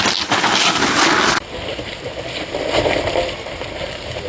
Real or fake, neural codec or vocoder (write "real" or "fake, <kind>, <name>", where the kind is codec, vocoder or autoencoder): real